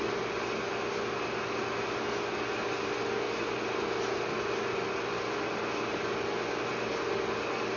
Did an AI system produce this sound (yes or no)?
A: no